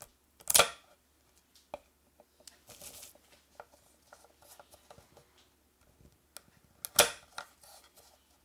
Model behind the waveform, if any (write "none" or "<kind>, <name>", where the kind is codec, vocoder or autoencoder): none